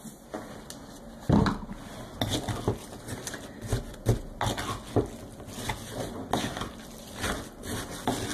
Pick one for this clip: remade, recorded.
recorded